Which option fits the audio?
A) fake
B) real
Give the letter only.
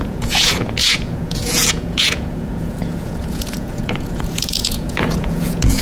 A